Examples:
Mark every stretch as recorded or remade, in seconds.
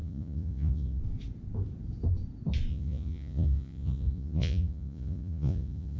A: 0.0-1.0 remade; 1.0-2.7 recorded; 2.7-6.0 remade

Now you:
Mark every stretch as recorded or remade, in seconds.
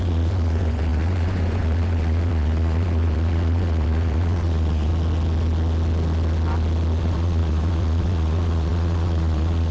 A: 0.0-4.9 remade; 4.9-7.0 recorded; 7.0-9.7 remade